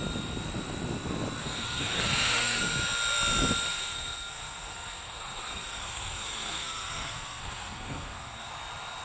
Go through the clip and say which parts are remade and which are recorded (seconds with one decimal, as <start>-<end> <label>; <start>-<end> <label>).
0.0-1.4 recorded; 1.4-2.6 remade; 2.6-3.7 recorded; 3.7-8.5 remade; 8.5-9.0 recorded